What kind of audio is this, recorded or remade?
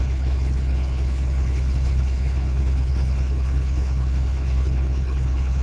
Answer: remade